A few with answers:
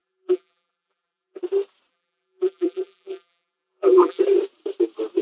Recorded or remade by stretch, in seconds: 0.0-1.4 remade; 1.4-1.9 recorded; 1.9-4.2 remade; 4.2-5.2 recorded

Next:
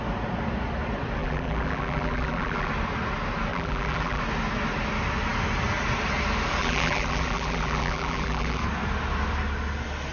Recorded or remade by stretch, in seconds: 0.0-1.2 recorded; 1.2-2.7 remade; 2.7-3.5 recorded; 3.5-4.2 remade; 4.2-6.6 recorded; 6.6-8.6 remade; 8.6-10.1 recorded